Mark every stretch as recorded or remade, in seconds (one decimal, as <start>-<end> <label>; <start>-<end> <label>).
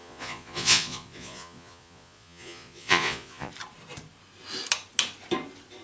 0.0-3.5 remade; 3.5-5.8 recorded